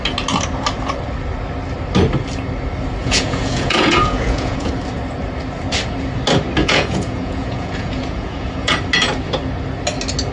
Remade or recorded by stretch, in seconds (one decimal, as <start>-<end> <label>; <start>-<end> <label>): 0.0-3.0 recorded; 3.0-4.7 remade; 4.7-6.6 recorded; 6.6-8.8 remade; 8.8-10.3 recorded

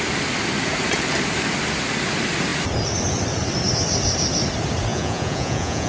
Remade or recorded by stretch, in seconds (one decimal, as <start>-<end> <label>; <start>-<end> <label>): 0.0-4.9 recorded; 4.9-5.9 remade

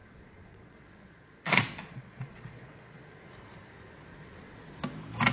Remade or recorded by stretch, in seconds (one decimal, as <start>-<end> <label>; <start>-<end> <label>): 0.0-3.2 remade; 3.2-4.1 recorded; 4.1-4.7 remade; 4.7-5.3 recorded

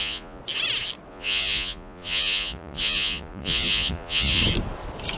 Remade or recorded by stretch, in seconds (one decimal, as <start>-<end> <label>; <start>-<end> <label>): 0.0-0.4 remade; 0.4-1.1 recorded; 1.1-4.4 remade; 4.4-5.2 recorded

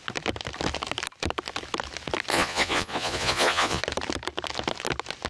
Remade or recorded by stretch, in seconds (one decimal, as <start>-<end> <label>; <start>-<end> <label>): 0.0-2.3 recorded; 2.3-3.8 remade; 3.8-5.3 recorded